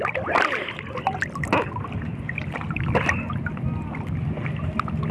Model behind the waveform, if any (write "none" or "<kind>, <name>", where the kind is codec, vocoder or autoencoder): none